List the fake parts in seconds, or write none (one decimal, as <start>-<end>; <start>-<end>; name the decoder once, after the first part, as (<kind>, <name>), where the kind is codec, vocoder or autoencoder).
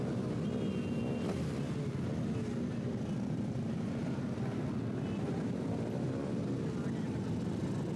none